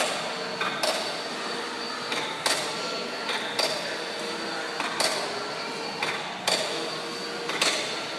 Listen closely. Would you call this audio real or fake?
real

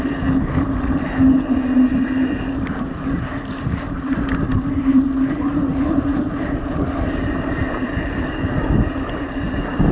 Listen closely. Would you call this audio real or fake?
fake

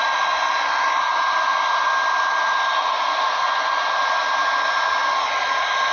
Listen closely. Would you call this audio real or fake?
real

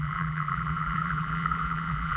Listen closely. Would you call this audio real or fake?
fake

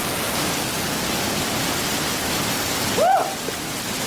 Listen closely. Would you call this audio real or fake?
real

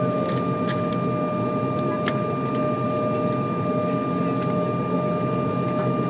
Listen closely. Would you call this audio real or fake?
real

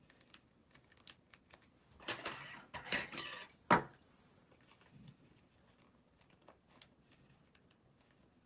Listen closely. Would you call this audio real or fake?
real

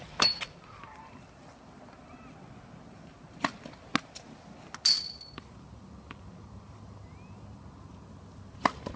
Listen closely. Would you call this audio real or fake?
real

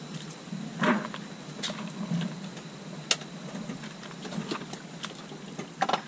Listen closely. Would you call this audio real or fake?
real